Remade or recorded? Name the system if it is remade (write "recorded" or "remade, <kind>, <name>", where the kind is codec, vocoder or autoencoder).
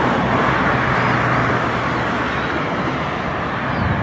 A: recorded